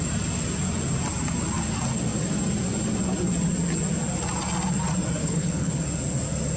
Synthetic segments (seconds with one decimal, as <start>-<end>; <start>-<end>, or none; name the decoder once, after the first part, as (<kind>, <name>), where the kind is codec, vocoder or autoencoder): 5.2-5.8 (codec, HILCodec)